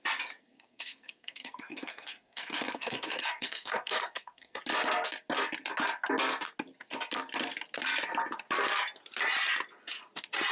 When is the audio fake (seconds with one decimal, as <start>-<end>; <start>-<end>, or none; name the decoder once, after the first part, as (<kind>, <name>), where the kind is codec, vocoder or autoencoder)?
0.4-4.6 (codec, SNAC)